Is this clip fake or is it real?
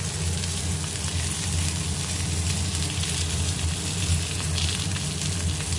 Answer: real